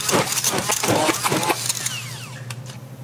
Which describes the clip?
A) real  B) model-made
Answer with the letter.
A